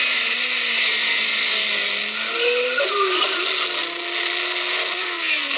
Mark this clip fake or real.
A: real